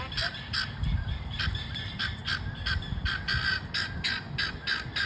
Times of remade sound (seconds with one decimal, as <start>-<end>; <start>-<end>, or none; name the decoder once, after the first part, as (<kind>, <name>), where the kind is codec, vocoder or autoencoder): 0.0-2.2 (vocoder, BigVGAN v2)